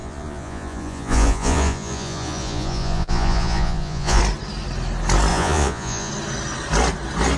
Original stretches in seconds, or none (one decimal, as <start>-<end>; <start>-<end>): 4.2-5.3; 6.1-7.4